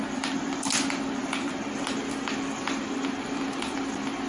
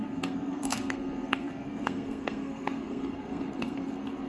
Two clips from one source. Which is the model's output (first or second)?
second